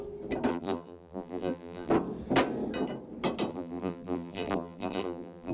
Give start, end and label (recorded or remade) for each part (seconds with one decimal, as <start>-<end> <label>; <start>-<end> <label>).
0.0-0.5 recorded; 0.5-1.9 remade; 1.9-3.5 recorded; 3.5-5.5 remade